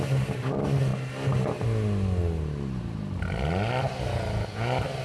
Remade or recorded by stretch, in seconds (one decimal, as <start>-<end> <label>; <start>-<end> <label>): 0.0-5.0 recorded